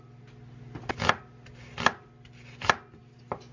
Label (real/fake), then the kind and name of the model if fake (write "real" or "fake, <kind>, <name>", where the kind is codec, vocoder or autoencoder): real